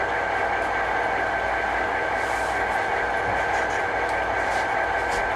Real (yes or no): yes